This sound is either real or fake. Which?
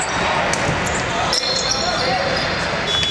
real